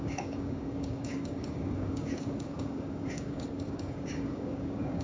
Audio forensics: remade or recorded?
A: remade